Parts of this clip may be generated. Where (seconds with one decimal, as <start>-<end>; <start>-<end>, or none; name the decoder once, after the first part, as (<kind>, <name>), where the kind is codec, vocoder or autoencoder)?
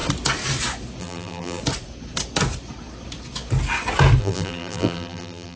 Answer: 1.0-1.6 (vocoder, BigVGAN v2); 4.2-5.6